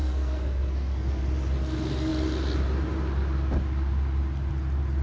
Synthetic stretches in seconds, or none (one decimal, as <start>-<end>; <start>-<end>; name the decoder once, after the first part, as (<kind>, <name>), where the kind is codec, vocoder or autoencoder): 0.0-1.2 (codec, SNAC)